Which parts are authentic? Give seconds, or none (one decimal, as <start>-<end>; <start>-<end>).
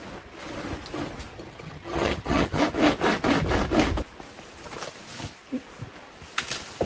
0.0-1.3; 2.6-6.9